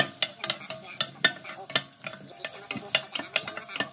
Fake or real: real